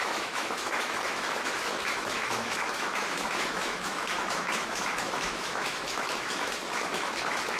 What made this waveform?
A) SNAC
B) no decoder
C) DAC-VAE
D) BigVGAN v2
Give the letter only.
C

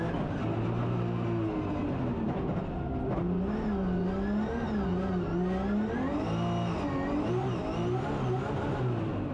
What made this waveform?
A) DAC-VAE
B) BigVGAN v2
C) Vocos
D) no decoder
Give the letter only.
D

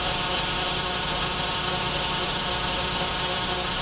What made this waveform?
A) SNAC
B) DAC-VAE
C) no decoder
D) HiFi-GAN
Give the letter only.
B